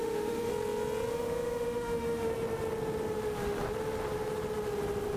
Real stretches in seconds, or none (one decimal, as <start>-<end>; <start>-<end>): 0.5-1.1; 2.3-5.2